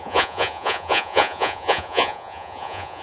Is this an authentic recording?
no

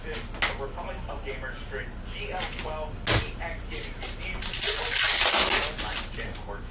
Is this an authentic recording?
yes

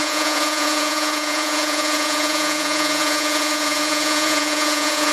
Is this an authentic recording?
no